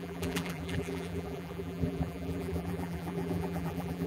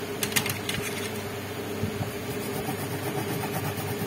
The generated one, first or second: first